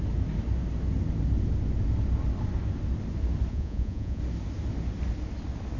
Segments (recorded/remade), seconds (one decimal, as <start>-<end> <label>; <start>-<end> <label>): 0.0-3.5 recorded; 3.5-4.2 remade; 4.2-5.8 recorded